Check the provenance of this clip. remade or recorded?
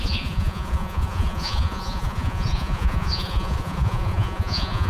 remade